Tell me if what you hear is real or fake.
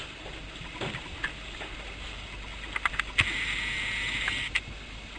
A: real